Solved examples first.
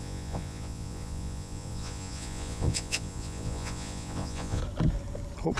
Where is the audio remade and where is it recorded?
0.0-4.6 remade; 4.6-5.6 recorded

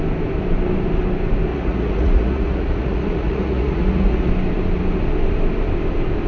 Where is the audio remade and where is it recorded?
0.0-1.5 recorded; 1.5-4.3 remade; 4.3-6.3 recorded

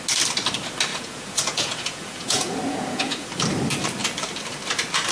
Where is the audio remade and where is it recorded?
0.0-0.9 recorded; 0.9-3.3 remade; 3.3-5.1 recorded

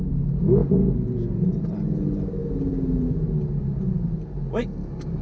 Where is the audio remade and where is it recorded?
0.0-0.6 recorded; 0.6-1.5 remade; 1.5-5.2 recorded

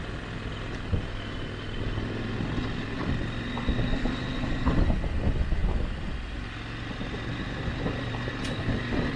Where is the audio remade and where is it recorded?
0.0-9.2 recorded

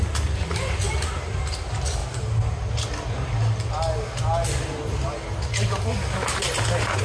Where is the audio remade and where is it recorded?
0.0-7.0 recorded

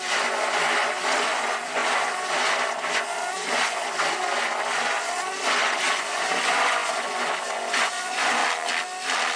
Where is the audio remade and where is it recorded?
0.0-8.4 remade; 8.4-9.4 recorded

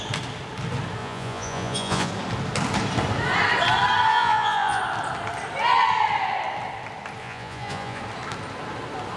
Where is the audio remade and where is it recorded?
0.0-1.0 recorded; 1.0-2.1 remade; 2.1-4.1 recorded; 4.1-4.8 remade; 4.8-7.2 recorded; 7.2-8.0 remade; 8.0-9.2 recorded